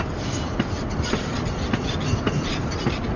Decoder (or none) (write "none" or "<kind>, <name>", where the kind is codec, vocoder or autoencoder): none